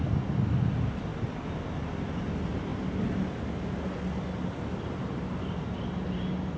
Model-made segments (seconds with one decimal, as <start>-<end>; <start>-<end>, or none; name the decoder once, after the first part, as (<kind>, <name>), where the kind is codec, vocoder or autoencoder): none